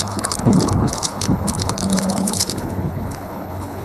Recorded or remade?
remade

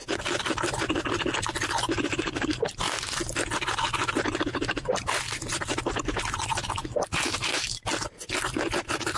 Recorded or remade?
recorded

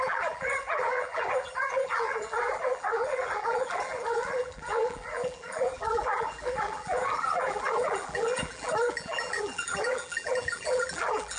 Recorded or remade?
remade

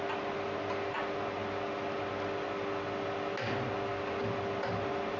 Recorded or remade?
recorded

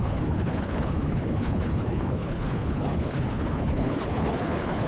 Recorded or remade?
remade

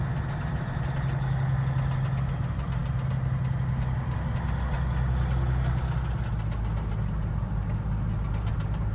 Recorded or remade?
recorded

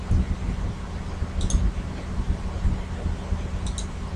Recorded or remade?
recorded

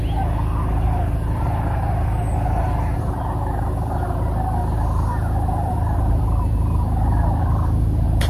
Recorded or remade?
recorded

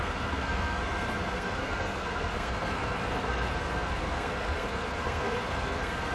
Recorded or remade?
remade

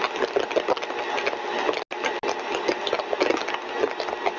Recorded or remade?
recorded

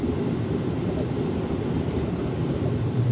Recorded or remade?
remade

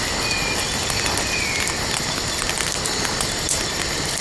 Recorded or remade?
recorded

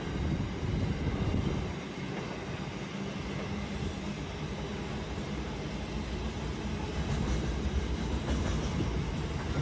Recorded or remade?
recorded